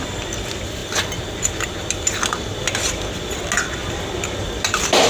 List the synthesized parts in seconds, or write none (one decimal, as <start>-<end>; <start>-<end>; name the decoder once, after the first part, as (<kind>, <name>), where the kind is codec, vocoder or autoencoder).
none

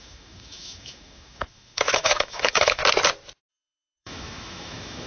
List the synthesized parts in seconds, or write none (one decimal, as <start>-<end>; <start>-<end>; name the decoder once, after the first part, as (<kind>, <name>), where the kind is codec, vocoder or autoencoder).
0.0-2.8 (autoencoder, DAC-VAE); 3.5-5.1

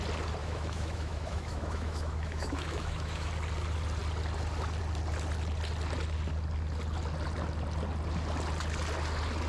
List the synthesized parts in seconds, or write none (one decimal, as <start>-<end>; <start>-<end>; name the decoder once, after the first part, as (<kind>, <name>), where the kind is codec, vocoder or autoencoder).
0.4-3.3 (autoencoder, DAC-VAE)